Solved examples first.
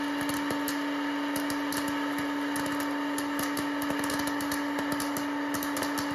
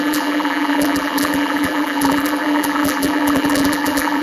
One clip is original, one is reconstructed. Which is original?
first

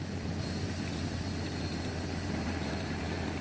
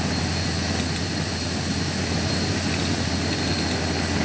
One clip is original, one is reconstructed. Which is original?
second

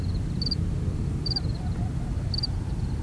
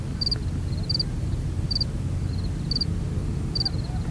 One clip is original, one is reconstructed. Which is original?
second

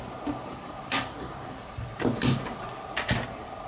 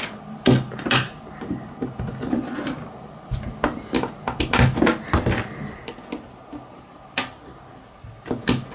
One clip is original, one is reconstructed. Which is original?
second